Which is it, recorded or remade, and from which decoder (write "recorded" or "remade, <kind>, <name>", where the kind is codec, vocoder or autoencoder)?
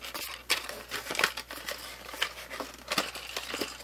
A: recorded